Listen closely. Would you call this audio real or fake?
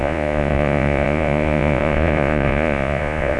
fake